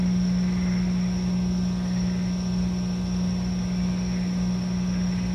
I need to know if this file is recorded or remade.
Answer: recorded